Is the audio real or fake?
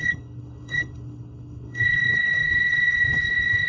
fake